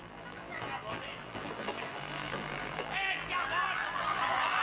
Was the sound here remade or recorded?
remade